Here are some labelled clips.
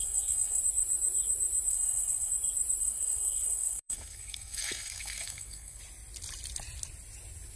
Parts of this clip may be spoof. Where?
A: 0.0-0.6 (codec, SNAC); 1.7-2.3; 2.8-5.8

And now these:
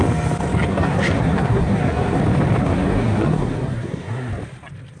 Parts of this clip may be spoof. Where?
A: 0.7-2.2 (codec, SNAC); 2.6-4.3

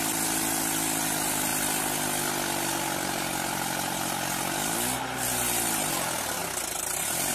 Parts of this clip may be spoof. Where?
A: none

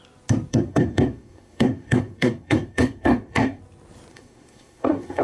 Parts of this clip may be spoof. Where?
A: 0.5-3.6 (codec, SNAC); 4.1-5.2

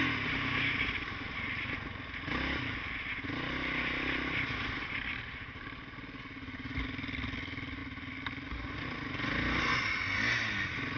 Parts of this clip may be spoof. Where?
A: none

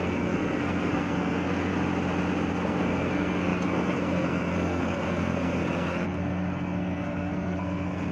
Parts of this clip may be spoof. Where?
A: 0.0-1.7 (codec, SNAC); 2.5-8.1